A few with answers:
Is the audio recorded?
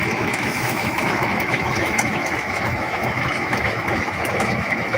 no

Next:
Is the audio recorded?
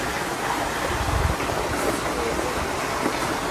yes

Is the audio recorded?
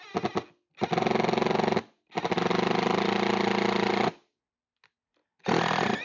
yes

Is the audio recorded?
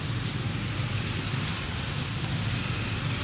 yes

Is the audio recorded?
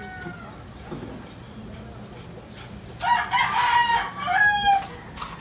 yes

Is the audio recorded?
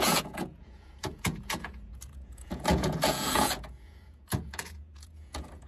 no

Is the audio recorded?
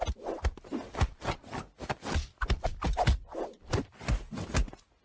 yes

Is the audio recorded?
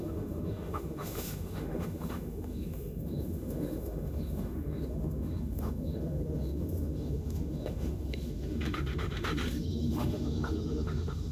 no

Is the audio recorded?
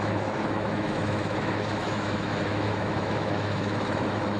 no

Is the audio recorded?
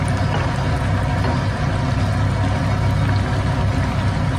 yes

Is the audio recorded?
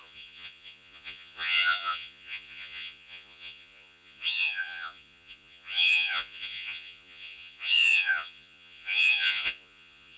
no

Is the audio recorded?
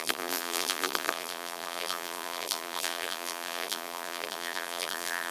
no